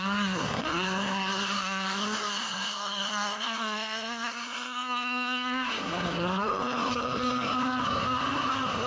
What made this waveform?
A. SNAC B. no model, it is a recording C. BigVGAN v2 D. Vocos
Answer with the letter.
A